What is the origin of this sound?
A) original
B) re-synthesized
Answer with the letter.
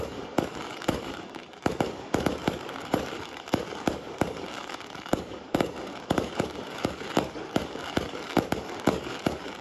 B